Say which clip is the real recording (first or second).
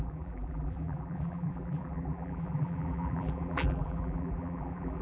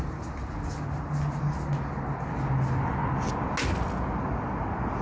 second